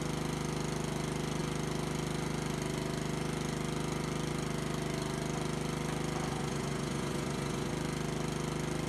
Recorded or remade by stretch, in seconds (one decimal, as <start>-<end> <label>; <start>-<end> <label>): 0.0-6.3 recorded; 6.3-7.7 remade; 7.7-8.9 recorded